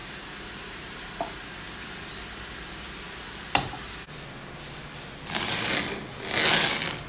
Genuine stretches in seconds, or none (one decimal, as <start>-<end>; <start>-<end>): 3.9-7.1